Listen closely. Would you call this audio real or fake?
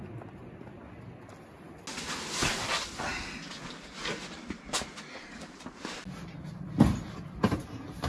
real